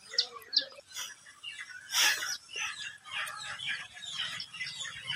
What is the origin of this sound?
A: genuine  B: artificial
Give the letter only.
A